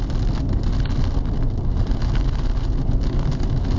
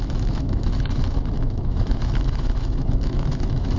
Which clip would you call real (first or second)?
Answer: first